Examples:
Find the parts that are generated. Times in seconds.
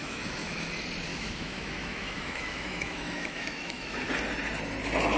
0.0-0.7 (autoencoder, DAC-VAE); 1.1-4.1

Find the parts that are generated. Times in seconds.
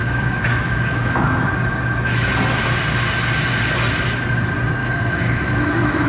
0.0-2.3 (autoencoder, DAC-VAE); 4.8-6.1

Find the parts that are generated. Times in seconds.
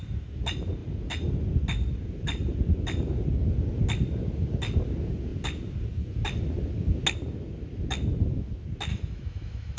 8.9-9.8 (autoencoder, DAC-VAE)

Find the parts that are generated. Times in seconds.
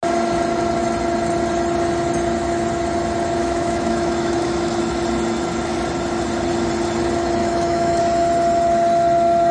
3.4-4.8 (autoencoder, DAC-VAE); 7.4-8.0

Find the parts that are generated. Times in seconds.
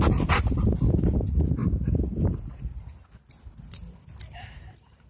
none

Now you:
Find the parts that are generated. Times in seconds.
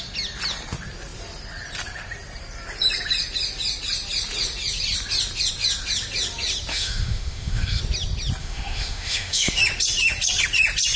6.7-7.8 (autoencoder, DAC-VAE); 8.4-9.6